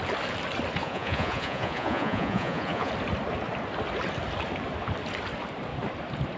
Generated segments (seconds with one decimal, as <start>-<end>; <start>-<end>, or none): 0.8-2.9